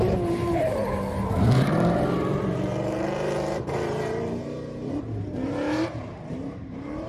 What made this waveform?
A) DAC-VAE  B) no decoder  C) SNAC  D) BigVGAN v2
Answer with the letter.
D